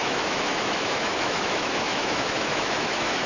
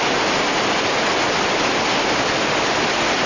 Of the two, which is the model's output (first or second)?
first